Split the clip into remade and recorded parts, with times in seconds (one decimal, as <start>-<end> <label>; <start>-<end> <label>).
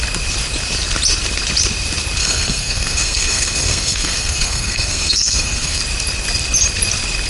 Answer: 0.0-2.2 recorded; 2.2-5.8 remade; 5.8-7.3 recorded